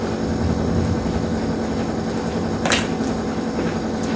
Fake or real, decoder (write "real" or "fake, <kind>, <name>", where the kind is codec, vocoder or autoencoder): real